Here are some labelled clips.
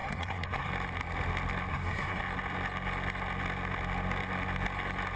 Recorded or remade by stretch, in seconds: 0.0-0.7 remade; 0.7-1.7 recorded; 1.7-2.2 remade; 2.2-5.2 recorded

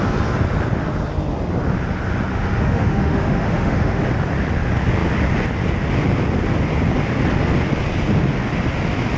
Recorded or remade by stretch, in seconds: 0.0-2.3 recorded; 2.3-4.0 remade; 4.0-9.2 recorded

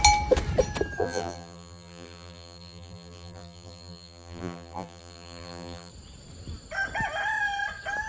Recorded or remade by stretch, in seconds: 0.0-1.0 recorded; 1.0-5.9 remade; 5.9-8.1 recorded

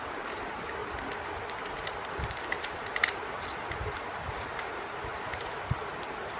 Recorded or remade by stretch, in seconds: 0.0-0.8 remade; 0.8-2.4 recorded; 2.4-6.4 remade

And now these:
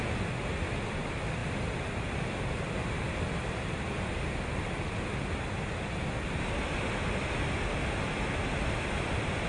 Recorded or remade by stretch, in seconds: 0.0-9.5 recorded

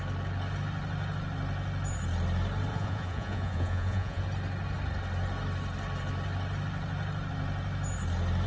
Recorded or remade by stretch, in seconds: 0.0-2.7 recorded; 2.7-4.2 remade; 4.2-8.5 recorded